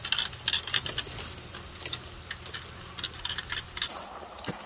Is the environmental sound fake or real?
real